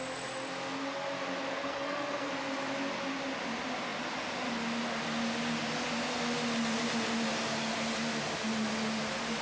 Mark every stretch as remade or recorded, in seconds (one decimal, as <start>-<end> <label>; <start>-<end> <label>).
0.0-1.5 recorded; 1.5-2.3 remade; 2.3-9.4 recorded